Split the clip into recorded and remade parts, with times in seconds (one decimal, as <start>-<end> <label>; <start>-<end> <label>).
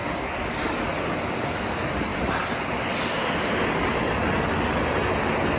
0.0-5.6 recorded